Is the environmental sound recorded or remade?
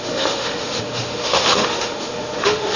remade